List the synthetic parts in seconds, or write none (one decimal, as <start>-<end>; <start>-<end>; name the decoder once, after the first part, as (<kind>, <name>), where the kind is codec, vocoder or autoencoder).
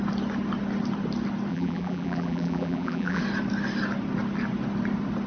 1.5-3.2 (vocoder, BigVGAN v2)